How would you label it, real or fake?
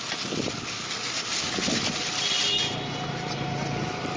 real